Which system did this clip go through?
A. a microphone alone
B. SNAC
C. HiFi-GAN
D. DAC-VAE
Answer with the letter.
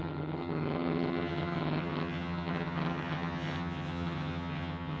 C